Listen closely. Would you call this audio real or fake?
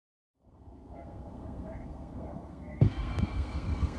fake